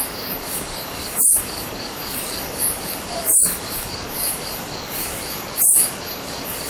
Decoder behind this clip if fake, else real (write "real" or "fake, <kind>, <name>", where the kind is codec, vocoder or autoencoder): fake, codec, DAC